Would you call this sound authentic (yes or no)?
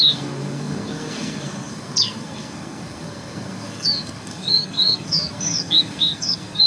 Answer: no